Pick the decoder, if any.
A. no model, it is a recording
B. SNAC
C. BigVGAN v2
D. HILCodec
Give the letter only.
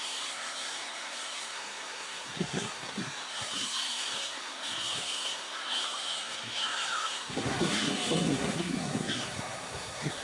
B